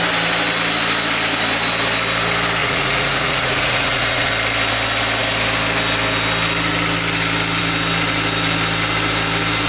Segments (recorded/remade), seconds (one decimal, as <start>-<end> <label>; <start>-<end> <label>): 0.0-2.6 recorded; 2.6-4.3 remade; 4.3-9.7 recorded